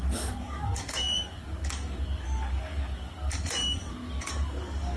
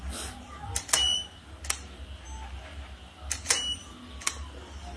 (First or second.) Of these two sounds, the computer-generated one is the first